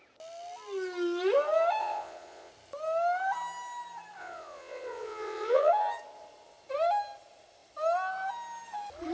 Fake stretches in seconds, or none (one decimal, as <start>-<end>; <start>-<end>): 1.8-2.5; 4.2-5.7

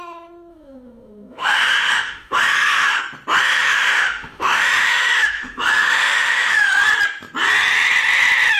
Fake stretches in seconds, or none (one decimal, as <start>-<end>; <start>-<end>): 0.5-3.0; 3.4-6.8

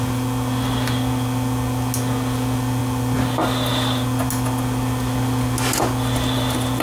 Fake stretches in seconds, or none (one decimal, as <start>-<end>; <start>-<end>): none